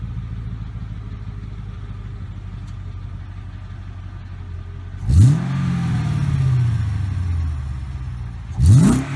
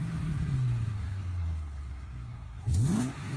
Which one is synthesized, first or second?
second